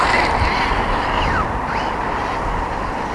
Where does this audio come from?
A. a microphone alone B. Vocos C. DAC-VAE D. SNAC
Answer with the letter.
A